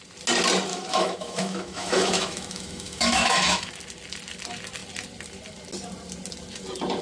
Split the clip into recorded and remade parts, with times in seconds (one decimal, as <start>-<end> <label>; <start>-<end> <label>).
0.0-0.7 recorded; 0.7-3.7 remade; 3.7-7.0 recorded